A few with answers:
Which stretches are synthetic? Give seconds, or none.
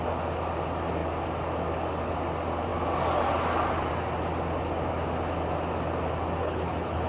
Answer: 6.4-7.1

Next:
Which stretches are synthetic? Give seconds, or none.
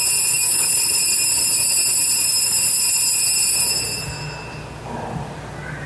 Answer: 0.5-1.0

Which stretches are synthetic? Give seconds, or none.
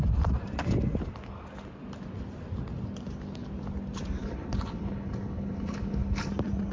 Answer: 4.2-6.3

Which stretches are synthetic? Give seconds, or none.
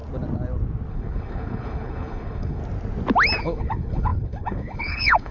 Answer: 0.9-2.6; 3.4-5.3